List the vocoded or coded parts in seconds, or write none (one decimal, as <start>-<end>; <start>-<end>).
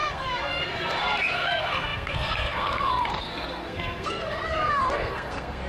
0.0-5.7